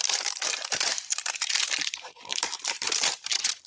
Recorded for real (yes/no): no